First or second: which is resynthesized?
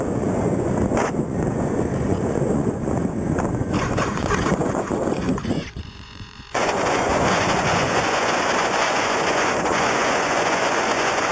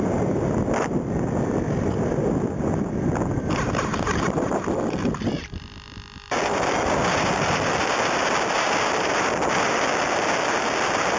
first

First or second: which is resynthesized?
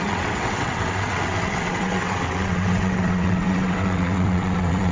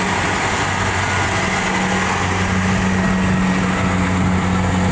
first